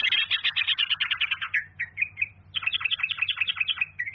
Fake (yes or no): no